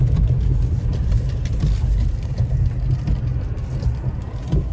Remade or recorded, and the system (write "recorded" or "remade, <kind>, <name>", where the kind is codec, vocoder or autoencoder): recorded